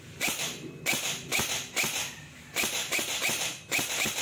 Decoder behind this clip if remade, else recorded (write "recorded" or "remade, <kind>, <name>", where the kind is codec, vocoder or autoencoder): recorded